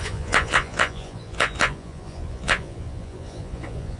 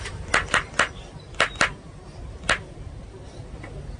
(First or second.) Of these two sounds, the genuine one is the second